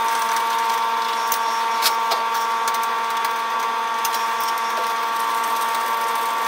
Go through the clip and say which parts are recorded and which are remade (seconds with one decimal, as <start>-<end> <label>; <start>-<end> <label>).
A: 0.0-0.7 remade; 0.7-6.5 recorded